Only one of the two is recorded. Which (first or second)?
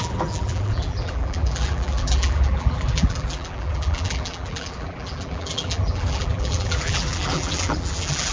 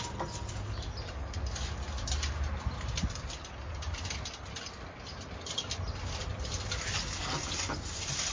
second